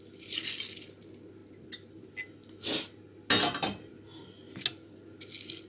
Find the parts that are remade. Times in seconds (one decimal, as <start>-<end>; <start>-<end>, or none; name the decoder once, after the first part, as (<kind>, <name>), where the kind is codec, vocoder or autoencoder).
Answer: none